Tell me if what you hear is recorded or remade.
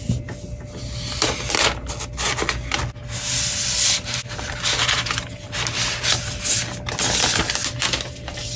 recorded